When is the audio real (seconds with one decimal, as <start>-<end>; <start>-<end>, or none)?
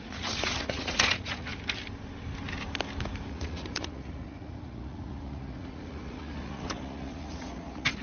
1.5-3.3